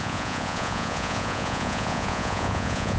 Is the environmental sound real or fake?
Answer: fake